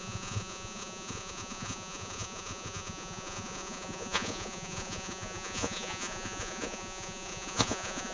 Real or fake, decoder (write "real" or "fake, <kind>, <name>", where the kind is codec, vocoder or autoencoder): fake, vocoder, Vocos